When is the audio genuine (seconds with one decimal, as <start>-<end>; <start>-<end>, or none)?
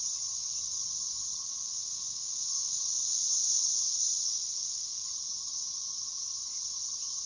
0.0-1.4; 5.0-7.3